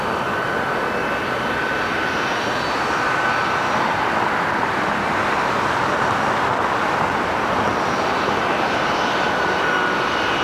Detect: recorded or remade recorded